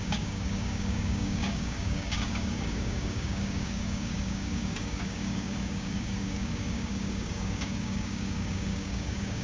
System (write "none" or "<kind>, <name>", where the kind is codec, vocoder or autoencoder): codec, DAC